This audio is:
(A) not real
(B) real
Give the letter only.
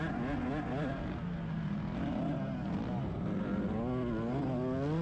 B